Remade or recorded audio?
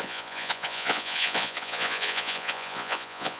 remade